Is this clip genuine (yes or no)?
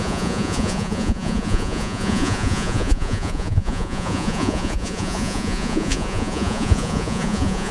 no